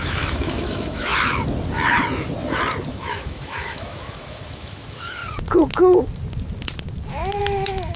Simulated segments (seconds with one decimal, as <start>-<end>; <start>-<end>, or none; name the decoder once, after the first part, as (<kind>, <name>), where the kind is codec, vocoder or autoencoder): 0.0-1.1 (autoencoder, DAC-VAE); 2.9-5.2; 7.4-8.0